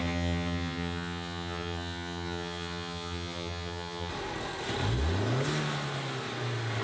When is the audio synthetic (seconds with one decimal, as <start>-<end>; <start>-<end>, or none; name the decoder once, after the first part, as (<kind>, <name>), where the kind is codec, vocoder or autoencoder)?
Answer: 0.0-4.1 (vocoder, HiFi-GAN)